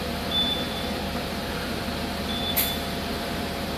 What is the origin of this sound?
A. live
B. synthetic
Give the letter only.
B